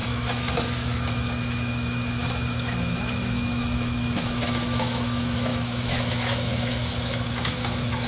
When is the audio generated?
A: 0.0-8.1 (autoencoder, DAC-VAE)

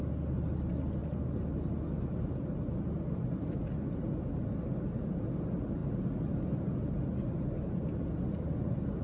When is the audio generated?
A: none

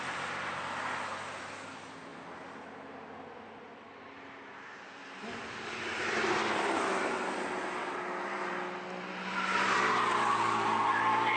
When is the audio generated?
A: none

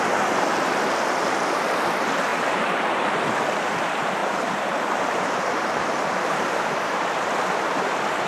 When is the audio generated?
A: 2.3-3.2 (vocoder, BigVGAN v2); 4.2-7.0

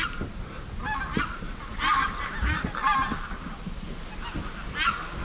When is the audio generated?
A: none

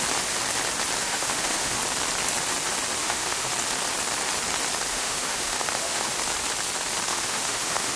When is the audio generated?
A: 1.0-1.8 (autoencoder, DAC-VAE); 3.0-3.5; 4.9-6.1; 7.1-8.0

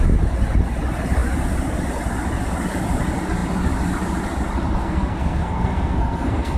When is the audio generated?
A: 4.8-6.6 (codec, SNAC)

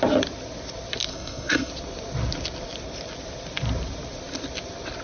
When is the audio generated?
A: 1.1-1.7 (codec, SNAC)